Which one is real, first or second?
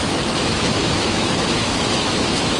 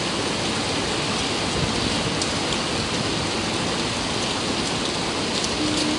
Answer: second